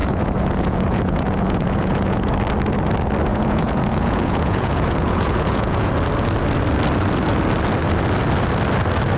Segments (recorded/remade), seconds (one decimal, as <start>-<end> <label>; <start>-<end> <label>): 0.0-2.3 remade; 2.3-3.3 recorded; 3.3-5.9 remade; 5.9-9.2 recorded